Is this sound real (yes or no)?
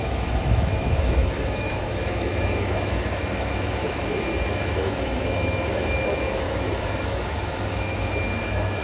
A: no